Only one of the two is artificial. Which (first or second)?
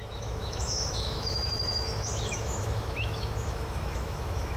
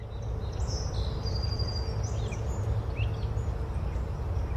first